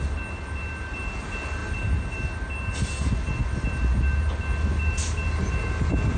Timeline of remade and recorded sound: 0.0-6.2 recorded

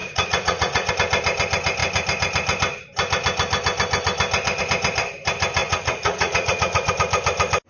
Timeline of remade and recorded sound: 0.0-0.9 remade; 0.9-5.6 recorded; 5.6-6.9 remade; 6.9-7.7 recorded

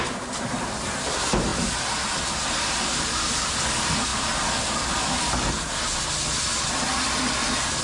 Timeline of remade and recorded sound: 0.0-7.8 recorded

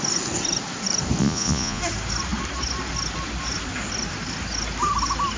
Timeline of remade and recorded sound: 0.0-1.2 recorded; 1.2-1.8 remade; 1.8-5.4 recorded

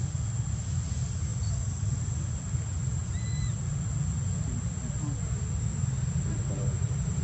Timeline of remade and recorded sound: 0.0-7.2 recorded

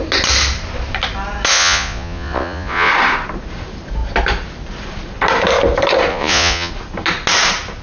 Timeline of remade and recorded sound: 0.0-1.5 recorded; 1.5-2.9 remade; 2.9-6.1 recorded; 6.1-6.7 remade; 6.7-7.8 recorded